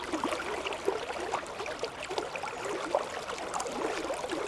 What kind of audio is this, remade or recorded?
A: recorded